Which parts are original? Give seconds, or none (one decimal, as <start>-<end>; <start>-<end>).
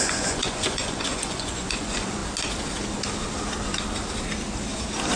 2.2-5.2